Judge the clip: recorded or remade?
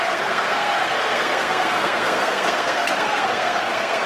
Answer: remade